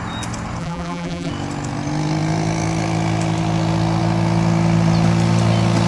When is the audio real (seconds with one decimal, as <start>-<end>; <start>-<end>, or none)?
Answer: 0.0-0.6; 1.3-5.9